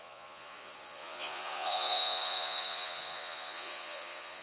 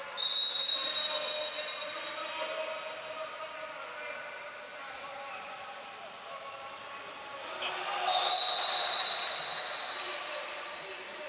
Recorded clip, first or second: second